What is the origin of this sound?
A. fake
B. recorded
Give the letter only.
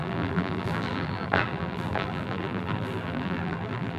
A